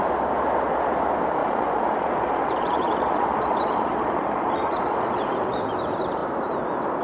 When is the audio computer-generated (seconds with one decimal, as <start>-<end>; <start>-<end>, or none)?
1.4-5.6

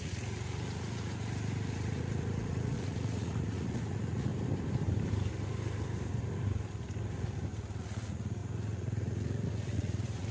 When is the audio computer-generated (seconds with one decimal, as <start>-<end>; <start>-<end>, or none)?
0.0-4.3; 7.8-10.3

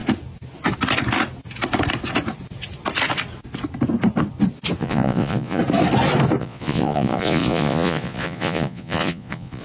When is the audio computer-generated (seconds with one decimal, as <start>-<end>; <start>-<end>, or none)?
4.8-5.6; 6.4-9.6